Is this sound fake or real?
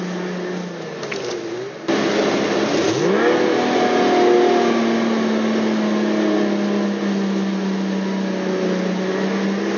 real